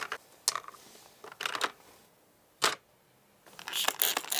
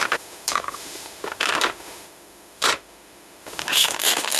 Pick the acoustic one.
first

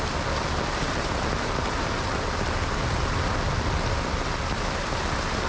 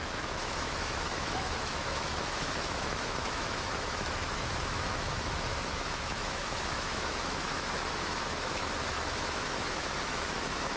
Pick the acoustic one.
first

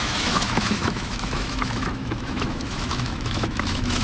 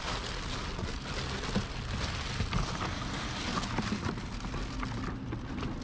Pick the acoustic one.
second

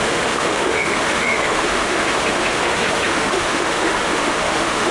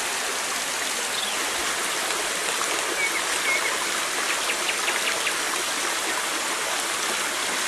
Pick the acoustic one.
second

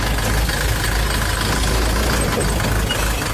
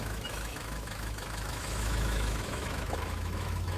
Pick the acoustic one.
first